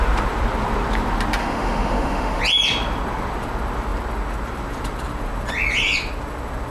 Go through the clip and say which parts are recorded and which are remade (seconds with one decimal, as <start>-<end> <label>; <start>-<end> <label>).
0.0-1.4 recorded; 1.4-2.4 remade; 2.4-6.7 recorded